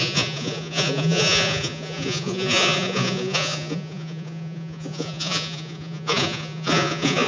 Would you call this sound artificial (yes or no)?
yes